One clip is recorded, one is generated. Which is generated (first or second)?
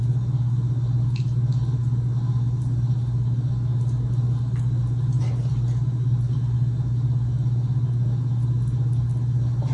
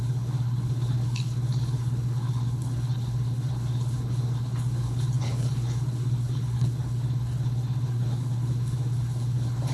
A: second